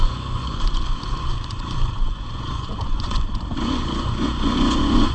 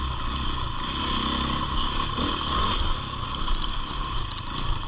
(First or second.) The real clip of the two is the second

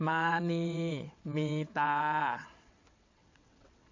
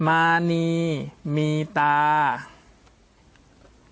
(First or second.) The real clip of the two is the second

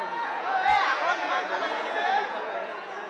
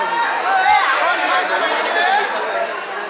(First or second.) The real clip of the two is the second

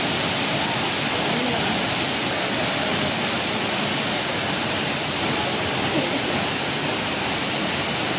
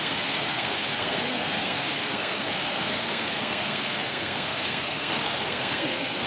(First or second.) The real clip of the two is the first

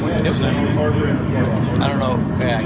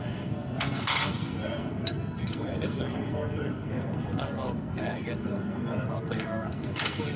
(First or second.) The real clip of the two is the first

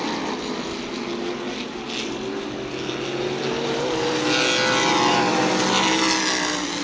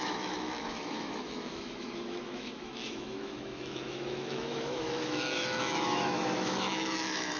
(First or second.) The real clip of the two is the first